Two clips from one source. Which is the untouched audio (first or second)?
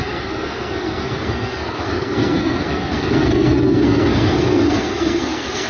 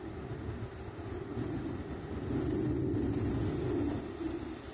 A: second